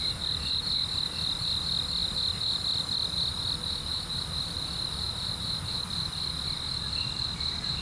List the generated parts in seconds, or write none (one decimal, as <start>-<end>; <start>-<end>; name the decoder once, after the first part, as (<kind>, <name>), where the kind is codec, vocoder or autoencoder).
none

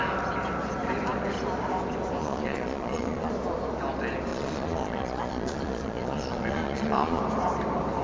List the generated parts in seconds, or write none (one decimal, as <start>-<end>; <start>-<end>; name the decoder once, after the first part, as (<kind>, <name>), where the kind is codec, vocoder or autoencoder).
2.2-3.3 (vocoder, Vocos); 4.3-7.2